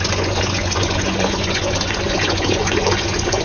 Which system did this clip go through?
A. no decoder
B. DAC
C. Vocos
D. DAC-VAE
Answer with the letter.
C